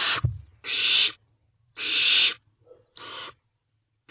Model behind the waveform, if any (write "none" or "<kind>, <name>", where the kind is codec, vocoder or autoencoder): none